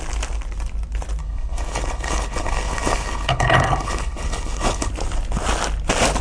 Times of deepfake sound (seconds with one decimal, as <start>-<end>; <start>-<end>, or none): 1.2-4.9